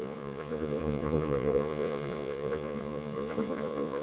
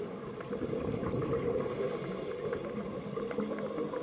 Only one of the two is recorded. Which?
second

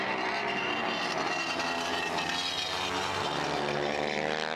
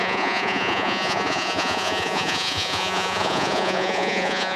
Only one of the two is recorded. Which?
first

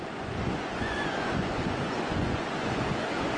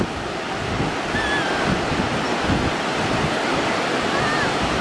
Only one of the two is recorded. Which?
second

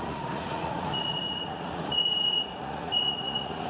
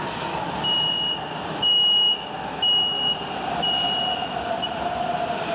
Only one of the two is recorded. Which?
second